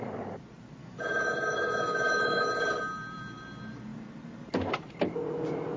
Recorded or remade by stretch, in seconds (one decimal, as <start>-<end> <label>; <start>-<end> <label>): 0.0-0.8 recorded; 0.8-2.5 remade; 2.5-5.8 recorded